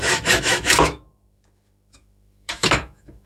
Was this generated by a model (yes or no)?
yes